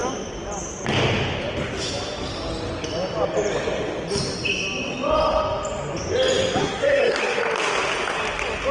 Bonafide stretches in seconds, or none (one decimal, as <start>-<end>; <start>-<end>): 0.0-6.6; 7.4-8.7